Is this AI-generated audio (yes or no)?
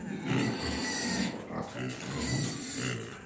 no